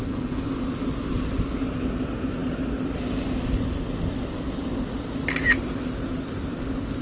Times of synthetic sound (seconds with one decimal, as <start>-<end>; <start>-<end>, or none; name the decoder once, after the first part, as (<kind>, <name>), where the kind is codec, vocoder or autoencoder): 0.0-0.5 (codec, HILCodec)